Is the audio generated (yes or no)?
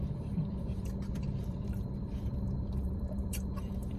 yes